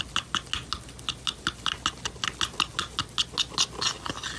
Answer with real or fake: real